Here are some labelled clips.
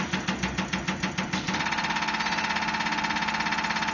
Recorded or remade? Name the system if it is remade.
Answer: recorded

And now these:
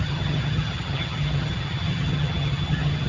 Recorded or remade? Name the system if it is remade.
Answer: remade, vocoder, HiFi-GAN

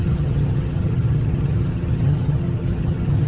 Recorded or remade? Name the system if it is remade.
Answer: remade, vocoder, HiFi-GAN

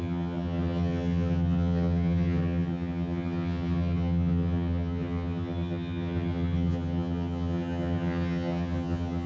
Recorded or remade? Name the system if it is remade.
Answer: remade, vocoder, HiFi-GAN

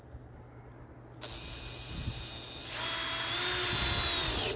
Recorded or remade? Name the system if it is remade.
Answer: recorded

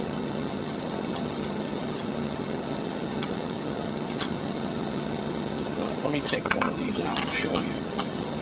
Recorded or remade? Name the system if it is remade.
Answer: remade, vocoder, HiFi-GAN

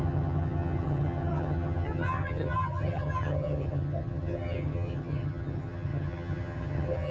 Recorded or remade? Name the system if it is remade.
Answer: remade, vocoder, HiFi-GAN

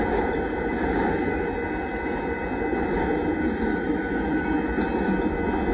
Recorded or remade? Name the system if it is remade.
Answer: recorded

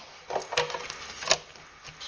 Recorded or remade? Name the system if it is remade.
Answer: recorded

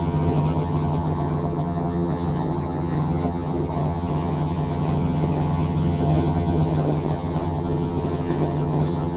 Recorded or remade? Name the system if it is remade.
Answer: remade, vocoder, HiFi-GAN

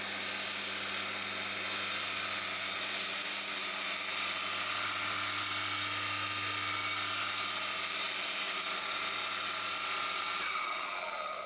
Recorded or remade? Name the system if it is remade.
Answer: recorded